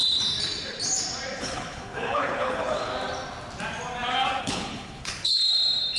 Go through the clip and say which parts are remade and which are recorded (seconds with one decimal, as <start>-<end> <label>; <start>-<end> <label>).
0.0-1.4 recorded; 1.4-2.9 remade; 2.9-4.4 recorded; 4.4-5.4 remade; 5.4-6.0 recorded